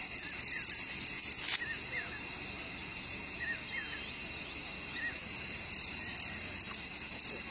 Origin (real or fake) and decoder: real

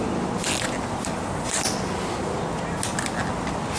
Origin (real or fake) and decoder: real